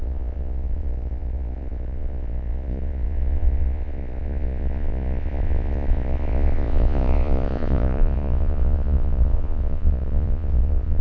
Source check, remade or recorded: remade